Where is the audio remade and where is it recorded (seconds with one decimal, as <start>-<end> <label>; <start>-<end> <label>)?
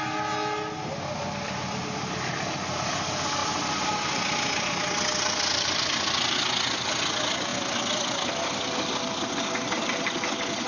0.0-10.7 recorded